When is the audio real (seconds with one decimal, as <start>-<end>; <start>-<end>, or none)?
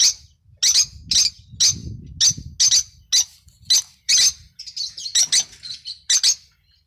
0.0-6.9